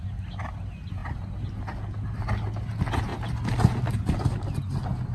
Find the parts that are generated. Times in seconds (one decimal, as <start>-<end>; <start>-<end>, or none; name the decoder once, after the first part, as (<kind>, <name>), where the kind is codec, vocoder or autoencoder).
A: none